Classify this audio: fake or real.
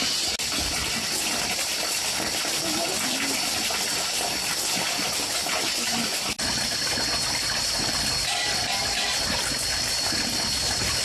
real